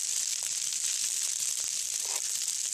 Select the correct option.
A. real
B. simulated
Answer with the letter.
A